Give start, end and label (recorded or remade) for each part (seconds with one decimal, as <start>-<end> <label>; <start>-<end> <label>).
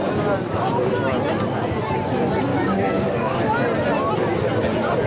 0.0-2.5 recorded; 2.5-3.4 remade; 3.4-5.1 recorded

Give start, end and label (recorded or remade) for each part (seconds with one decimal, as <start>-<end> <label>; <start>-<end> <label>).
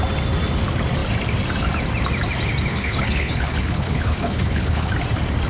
0.0-2.7 recorded; 2.7-4.9 remade; 4.9-5.5 recorded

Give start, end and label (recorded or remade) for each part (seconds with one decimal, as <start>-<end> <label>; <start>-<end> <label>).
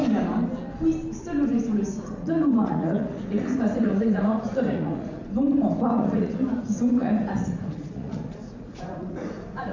0.0-1.9 recorded; 1.9-5.2 remade; 5.2-5.9 recorded; 5.9-9.7 remade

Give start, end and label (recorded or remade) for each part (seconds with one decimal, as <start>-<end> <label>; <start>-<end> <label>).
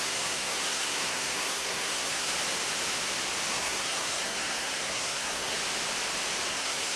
0.0-2.3 remade; 2.3-3.5 recorded; 3.5-5.6 remade; 5.6-6.5 recorded; 6.5-7.0 remade